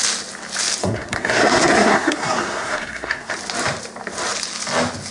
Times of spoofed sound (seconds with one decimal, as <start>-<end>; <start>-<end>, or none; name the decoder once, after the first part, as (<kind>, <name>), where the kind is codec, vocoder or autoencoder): 0.8-3.3 (codec, SNAC)